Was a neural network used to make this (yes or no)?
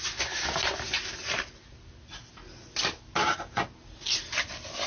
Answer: no